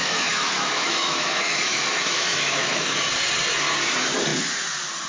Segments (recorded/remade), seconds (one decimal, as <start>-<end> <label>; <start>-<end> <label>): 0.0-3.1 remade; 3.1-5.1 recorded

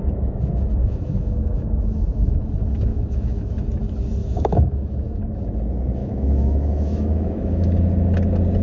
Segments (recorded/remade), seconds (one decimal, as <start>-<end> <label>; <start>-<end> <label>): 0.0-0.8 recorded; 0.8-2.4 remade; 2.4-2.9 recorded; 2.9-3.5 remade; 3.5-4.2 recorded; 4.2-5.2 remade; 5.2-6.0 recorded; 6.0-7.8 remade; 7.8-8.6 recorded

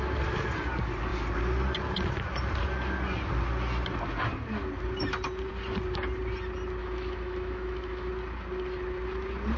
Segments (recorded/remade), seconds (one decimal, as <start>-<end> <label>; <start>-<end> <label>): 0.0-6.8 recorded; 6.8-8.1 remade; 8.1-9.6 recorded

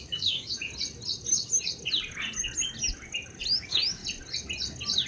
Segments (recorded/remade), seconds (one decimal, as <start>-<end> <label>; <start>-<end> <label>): 0.0-0.7 remade; 0.7-3.6 recorded; 3.6-4.0 remade; 4.0-5.1 recorded